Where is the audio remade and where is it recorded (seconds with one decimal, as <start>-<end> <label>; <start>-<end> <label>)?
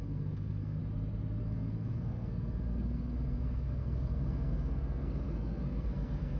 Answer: 0.0-0.8 remade; 0.8-1.4 recorded; 1.4-6.4 remade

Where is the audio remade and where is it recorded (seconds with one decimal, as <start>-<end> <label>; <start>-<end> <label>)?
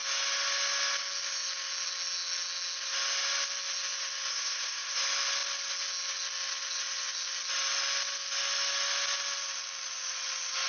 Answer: 0.0-4.3 recorded; 4.3-5.0 remade; 5.0-10.7 recorded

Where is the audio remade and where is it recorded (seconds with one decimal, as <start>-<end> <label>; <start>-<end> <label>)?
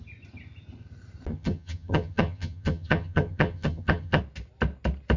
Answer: 0.0-1.3 recorded; 1.3-4.2 remade; 4.2-5.2 recorded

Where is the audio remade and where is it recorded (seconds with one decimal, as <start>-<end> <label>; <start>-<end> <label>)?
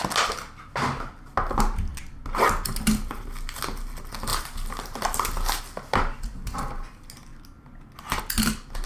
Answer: 0.0-8.9 recorded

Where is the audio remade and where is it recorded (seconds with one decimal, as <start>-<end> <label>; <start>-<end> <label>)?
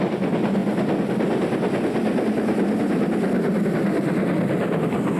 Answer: 0.0-5.2 recorded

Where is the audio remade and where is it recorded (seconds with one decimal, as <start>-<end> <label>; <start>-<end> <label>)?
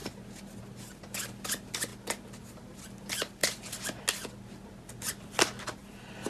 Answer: 0.0-6.3 recorded